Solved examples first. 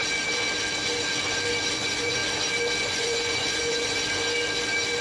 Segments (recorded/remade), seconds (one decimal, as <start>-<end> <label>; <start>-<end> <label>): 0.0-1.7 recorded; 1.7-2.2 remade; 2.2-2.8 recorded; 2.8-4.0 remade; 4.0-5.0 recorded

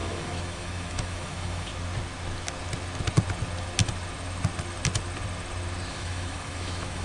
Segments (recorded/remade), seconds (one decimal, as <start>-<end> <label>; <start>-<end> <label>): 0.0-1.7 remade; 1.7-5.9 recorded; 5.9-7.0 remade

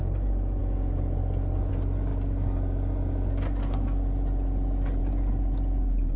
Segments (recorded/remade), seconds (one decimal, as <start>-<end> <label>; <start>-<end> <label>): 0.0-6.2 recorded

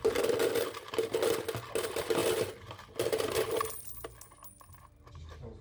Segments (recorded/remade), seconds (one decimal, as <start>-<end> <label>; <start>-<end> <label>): 0.0-5.6 recorded

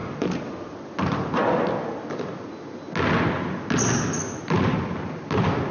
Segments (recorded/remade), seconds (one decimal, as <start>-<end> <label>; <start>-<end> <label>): 0.0-0.8 remade; 0.8-5.7 recorded

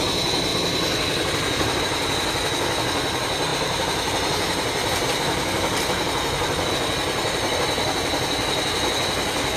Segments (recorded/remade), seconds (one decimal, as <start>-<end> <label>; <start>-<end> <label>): 0.0-0.5 recorded; 0.5-1.8 remade; 1.8-3.5 recorded; 3.5-6.7 remade; 6.7-9.6 recorded

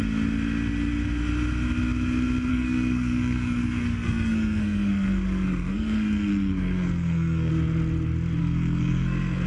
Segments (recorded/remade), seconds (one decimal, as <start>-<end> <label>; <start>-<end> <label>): 0.0-2.5 recorded; 2.5-7.5 remade; 7.5-8.4 recorded; 8.4-9.5 remade